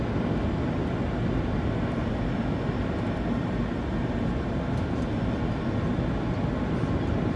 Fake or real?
real